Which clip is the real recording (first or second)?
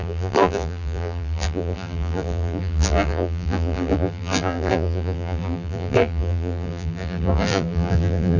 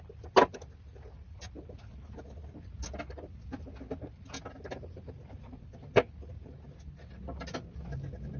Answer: second